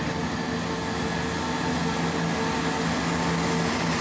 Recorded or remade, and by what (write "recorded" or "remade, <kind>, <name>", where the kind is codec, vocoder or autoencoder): recorded